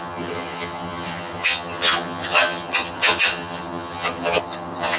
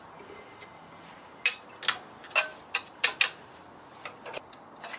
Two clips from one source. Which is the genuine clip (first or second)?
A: second